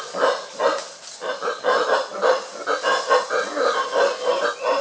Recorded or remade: recorded